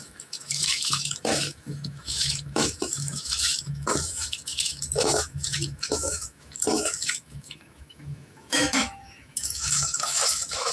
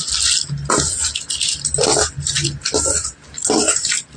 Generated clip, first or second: first